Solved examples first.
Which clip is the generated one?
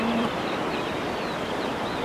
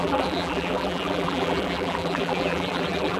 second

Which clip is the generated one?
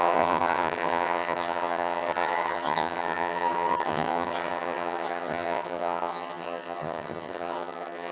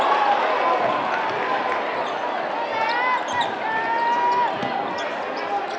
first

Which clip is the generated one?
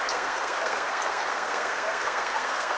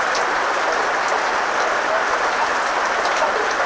first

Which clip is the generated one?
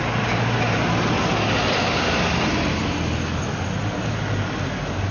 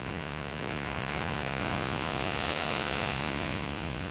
second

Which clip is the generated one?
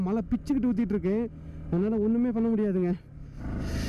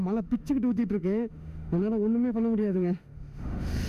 second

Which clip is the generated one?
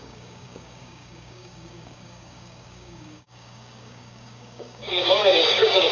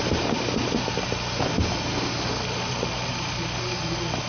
first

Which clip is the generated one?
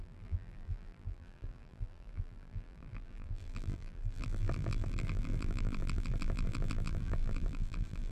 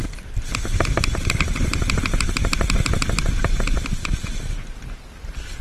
first